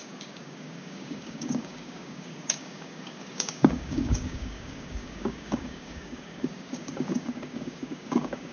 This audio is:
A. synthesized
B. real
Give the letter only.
A